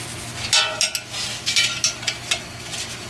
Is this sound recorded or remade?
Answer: recorded